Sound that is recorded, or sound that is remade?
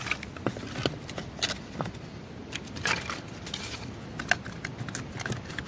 recorded